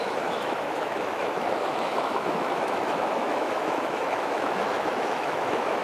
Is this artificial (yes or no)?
yes